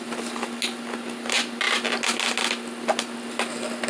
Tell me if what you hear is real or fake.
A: real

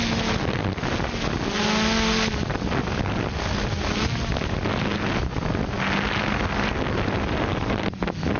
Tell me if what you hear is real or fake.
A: real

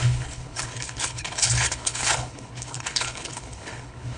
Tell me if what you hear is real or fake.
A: fake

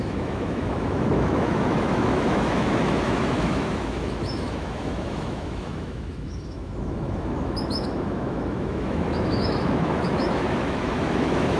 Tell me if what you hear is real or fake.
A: fake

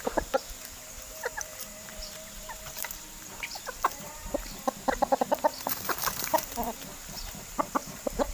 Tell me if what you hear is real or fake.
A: fake